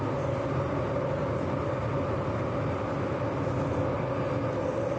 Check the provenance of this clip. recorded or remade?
recorded